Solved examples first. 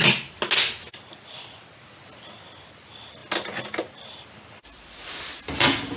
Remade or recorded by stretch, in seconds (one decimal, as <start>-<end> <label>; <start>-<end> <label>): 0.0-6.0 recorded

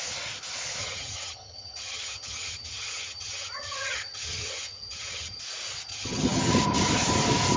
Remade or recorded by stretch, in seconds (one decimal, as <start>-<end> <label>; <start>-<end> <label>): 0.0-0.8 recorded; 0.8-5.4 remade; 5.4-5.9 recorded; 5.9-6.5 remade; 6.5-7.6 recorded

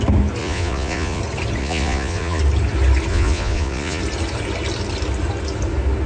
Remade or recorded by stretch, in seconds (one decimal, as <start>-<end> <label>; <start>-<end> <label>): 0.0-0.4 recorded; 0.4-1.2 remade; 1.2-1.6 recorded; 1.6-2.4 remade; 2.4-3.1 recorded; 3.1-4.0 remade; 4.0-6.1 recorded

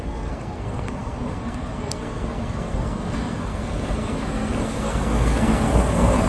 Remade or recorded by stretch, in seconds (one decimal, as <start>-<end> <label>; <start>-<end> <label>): 0.0-6.3 remade

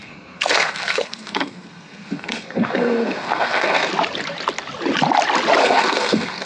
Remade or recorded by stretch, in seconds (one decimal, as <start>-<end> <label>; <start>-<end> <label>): 0.0-3.9 remade; 3.9-5.6 recorded; 5.6-6.5 remade

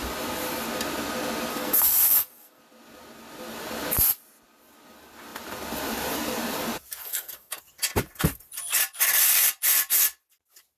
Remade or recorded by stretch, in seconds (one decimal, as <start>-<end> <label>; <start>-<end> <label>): 0.0-1.5 recorded; 1.5-2.6 remade; 2.6-7.0 recorded; 7.0-7.6 remade; 7.6-10.8 recorded